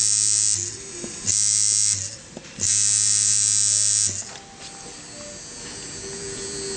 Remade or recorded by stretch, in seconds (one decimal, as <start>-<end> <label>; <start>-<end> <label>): 0.0-6.8 recorded